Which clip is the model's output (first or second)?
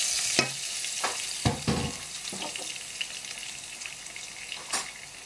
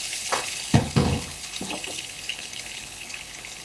second